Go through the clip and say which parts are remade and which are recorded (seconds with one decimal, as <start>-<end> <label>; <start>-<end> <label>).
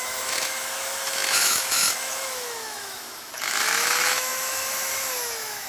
0.0-5.7 remade